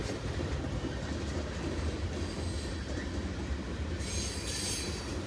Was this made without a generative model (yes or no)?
yes